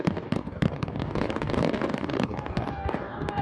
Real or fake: fake